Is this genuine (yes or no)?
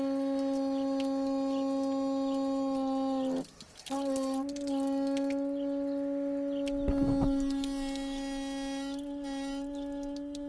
yes